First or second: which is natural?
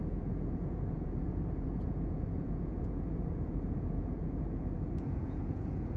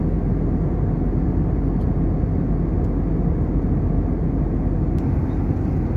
second